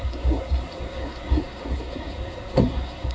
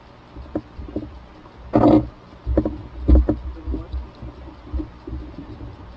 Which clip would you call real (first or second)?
second